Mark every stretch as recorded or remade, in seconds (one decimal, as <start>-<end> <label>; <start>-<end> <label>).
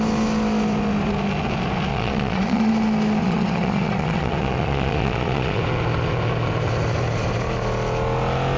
0.0-1.9 recorded; 1.9-2.7 remade; 2.7-3.2 recorded; 3.2-5.6 remade; 5.6-8.6 recorded